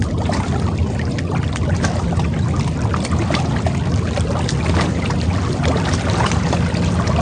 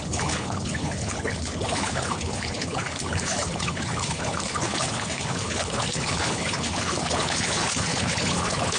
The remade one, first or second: second